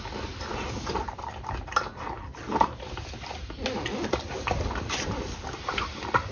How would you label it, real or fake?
real